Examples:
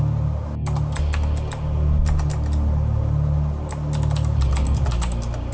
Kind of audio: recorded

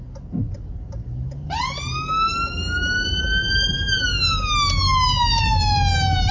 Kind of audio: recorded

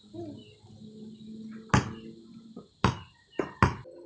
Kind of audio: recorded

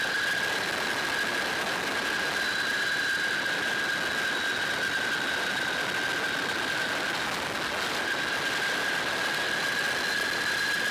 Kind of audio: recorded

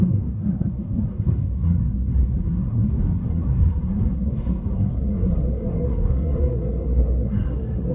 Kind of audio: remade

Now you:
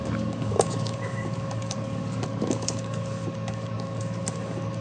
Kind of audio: remade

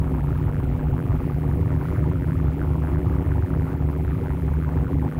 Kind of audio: remade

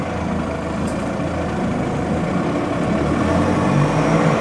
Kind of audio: recorded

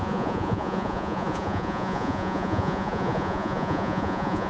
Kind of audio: remade